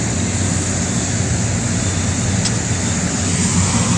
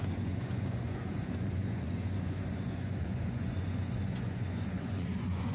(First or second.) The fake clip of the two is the second